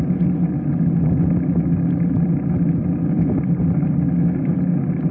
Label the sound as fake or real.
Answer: real